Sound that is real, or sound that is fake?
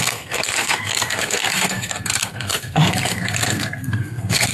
fake